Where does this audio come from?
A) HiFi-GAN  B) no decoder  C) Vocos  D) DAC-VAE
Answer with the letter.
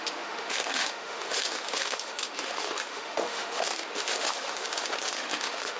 D